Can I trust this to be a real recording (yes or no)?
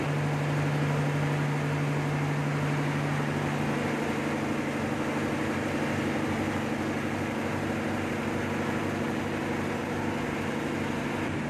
yes